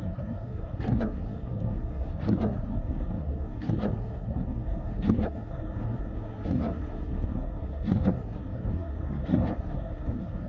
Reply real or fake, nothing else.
fake